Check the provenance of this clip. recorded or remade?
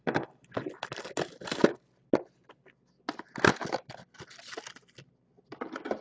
recorded